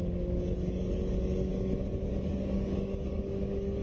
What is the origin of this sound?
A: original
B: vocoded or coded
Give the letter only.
B